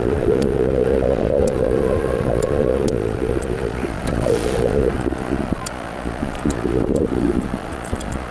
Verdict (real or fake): fake